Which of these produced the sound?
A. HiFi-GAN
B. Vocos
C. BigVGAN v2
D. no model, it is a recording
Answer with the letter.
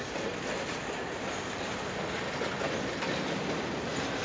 D